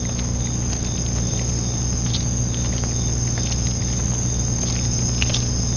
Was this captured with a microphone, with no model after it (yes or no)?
yes